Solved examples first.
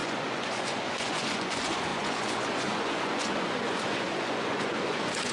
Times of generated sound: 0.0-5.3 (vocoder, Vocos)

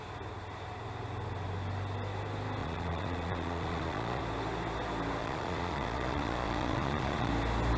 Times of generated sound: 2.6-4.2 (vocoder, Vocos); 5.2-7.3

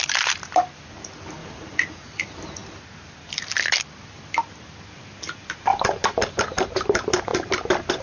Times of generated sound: 1.4-2.2 (vocoder, Vocos)

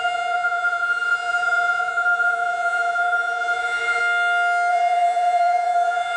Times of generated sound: 0.0-4.0 (vocoder, Vocos); 4.7-6.2

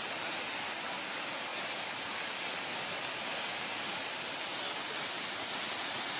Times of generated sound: none

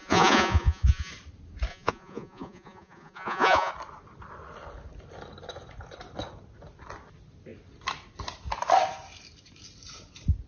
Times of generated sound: 0.0-1.1 (vocoder, Vocos); 1.7-3.7